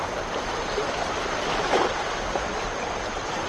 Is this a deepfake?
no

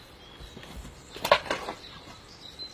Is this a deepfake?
no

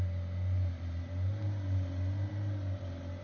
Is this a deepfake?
no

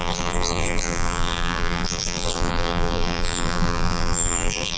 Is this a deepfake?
yes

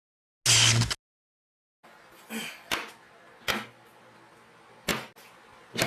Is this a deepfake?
no